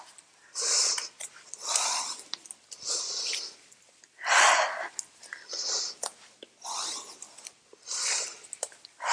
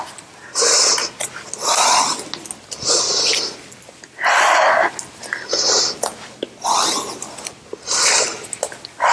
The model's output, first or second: first